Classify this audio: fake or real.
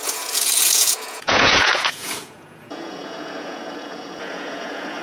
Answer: fake